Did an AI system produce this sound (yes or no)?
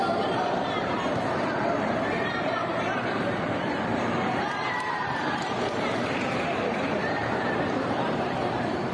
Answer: yes